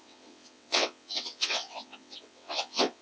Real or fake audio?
fake